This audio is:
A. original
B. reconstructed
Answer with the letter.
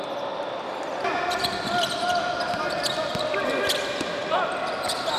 A